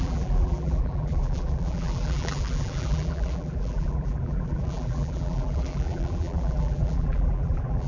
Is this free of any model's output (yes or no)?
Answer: no